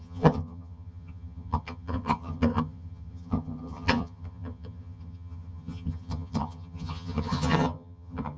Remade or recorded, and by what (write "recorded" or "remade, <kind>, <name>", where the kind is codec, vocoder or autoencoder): remade, vocoder, HiFi-GAN